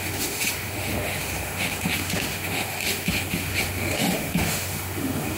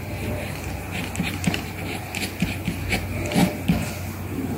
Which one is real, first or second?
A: second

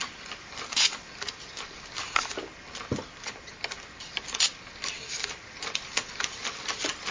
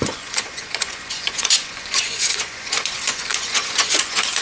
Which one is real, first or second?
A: first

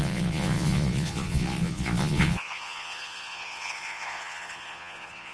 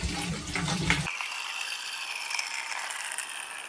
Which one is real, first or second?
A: second